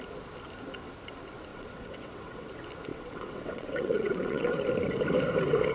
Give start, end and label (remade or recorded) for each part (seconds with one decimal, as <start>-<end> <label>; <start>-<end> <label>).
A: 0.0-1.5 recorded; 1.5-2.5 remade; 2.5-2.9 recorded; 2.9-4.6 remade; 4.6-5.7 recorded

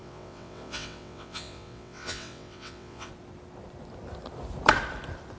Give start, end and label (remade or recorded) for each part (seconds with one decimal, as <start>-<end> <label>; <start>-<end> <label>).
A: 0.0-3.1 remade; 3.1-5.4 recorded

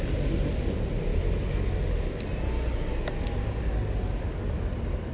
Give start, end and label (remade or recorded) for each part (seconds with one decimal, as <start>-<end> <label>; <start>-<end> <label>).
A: 0.0-5.1 recorded